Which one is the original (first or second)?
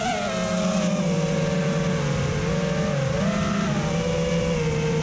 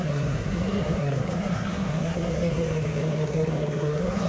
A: first